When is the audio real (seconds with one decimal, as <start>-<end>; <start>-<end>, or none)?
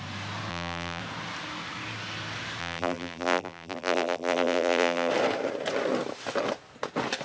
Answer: 0.0-0.5; 1.0-2.6; 5.1-7.2